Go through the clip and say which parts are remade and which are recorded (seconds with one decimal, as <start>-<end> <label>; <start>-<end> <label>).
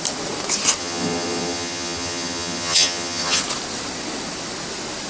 0.0-0.8 recorded; 0.8-3.4 remade; 3.4-5.1 recorded